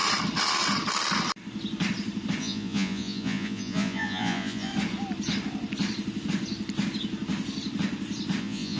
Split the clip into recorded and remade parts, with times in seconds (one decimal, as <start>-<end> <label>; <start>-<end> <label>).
0.0-2.4 recorded; 2.4-4.7 remade; 4.7-8.4 recorded; 8.4-8.8 remade